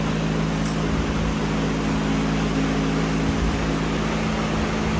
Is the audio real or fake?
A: real